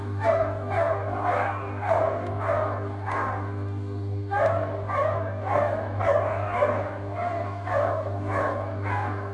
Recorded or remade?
remade